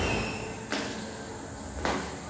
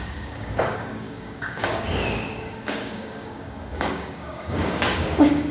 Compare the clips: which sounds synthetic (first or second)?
second